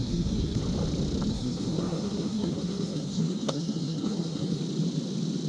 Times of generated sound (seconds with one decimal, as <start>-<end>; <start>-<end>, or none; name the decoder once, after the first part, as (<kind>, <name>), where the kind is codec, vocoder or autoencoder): 0.0-0.6 (codec, SNAC); 1.3-4.6